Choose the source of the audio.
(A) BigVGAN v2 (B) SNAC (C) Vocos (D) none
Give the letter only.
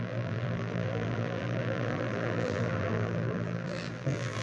A